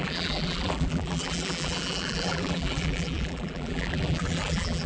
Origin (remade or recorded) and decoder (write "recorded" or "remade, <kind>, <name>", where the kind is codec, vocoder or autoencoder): remade, vocoder, BigVGAN v2